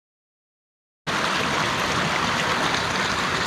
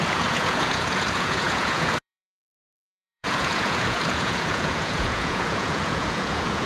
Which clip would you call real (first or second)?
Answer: first